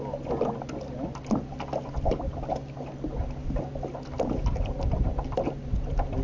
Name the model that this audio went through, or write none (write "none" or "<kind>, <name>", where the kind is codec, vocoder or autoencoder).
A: none